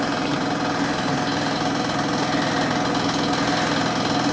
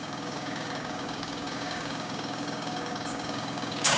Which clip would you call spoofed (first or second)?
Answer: second